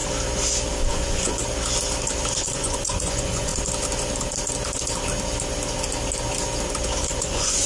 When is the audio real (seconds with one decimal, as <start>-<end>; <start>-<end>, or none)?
0.0-0.9; 1.4-2.4; 3.5-7.0

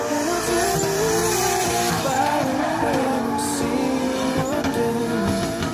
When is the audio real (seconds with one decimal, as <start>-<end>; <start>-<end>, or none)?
0.0-1.2; 4.6-5.7

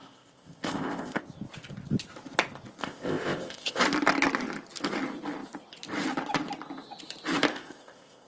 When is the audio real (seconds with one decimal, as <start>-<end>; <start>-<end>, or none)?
1.2-2.8; 3.8-7.5

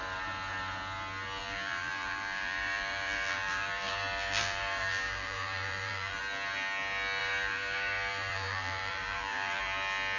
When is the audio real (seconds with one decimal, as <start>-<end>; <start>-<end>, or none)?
0.0-1.4; 6.2-7.2; 9.6-10.2

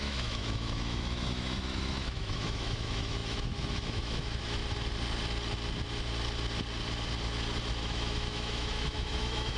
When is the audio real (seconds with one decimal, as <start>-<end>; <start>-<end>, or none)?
4.6-7.8

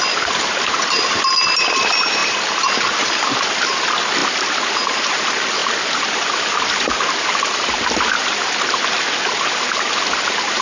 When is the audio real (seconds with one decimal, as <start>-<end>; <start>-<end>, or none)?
0.0-10.6

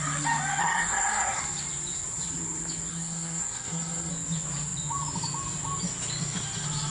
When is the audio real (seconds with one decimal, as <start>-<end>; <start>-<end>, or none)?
0.0-0.6; 1.4-2.9; 4.1-6.9